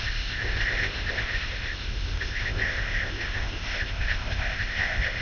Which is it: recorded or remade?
remade